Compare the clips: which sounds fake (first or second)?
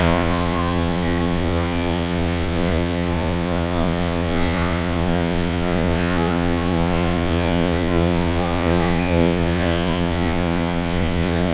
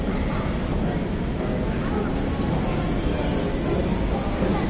first